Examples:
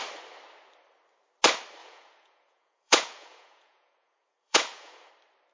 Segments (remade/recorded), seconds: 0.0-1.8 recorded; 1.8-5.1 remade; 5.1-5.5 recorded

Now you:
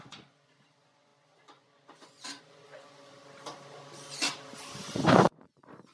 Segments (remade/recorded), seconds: 0.0-3.1 remade; 3.1-4.8 recorded; 4.8-5.9 remade

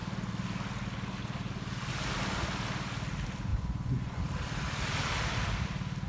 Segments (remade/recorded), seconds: 0.0-3.5 recorded; 3.5-4.2 remade; 4.2-6.1 recorded

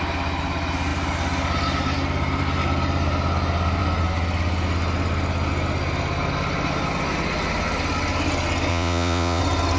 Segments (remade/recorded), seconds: 0.0-8.7 recorded; 8.7-9.4 remade; 9.4-9.8 recorded